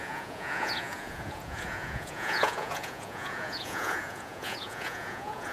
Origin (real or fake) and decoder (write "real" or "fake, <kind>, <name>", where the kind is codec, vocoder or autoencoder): fake, vocoder, Vocos